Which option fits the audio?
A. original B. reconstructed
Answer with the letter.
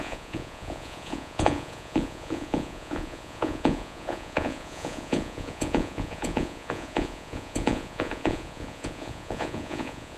B